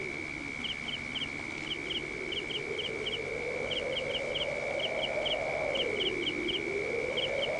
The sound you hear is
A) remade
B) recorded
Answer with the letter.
B